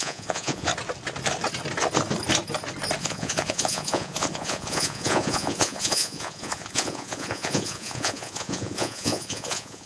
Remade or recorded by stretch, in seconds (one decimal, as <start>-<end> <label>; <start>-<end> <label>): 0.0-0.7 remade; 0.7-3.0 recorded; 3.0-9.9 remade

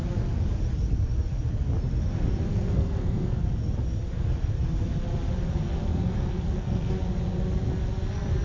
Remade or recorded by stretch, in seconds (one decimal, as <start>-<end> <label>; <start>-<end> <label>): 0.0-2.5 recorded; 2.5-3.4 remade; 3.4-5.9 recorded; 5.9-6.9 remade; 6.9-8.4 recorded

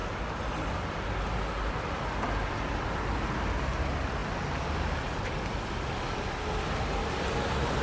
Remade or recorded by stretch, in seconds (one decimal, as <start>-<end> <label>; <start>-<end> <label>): 0.0-7.8 recorded

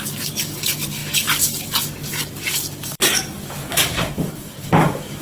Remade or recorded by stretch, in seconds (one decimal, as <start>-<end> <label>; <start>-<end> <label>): 0.0-5.2 remade

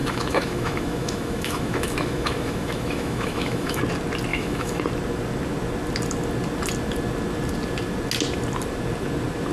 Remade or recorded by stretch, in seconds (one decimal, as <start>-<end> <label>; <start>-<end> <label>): 0.0-3.8 remade; 3.8-4.3 recorded; 4.3-4.8 remade; 4.8-9.5 recorded

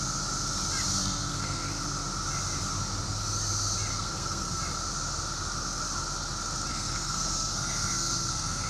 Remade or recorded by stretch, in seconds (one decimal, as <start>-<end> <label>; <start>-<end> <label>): 0.0-1.0 recorded; 1.0-1.7 remade; 1.7-3.9 recorded; 3.9-4.6 remade; 4.6-6.7 recorded; 6.7-8.7 remade

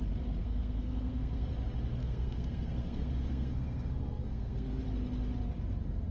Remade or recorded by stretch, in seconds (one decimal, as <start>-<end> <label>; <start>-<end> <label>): 0.0-0.4 recorded; 0.4-1.5 remade; 1.5-2.0 recorded; 2.0-4.8 remade; 4.8-6.1 recorded

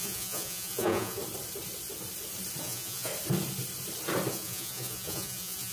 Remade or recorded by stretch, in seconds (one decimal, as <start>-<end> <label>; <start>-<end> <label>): 0.0-1.2 remade; 1.2-2.6 recorded; 2.6-3.1 remade; 3.1-4.3 recorded; 4.3-5.7 remade